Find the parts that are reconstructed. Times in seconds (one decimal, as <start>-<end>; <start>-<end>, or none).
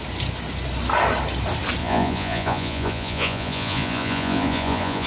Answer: 1.8-5.1